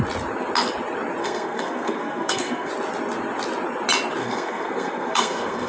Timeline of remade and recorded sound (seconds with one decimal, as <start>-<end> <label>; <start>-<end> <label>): 0.0-1.2 recorded; 1.2-2.7 remade; 2.7-4.2 recorded; 4.2-5.7 remade